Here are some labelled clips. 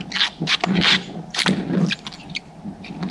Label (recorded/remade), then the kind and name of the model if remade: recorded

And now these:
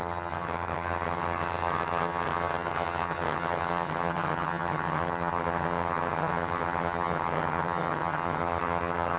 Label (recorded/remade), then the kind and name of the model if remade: remade, vocoder, HiFi-GAN